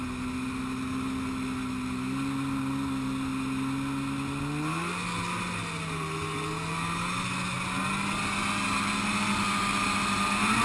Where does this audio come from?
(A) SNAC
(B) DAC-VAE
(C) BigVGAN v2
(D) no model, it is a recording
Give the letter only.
D